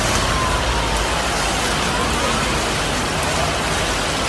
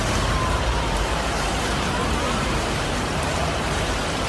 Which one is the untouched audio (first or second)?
first